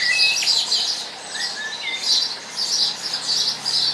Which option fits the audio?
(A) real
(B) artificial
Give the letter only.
A